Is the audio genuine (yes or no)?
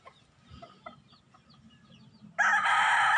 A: yes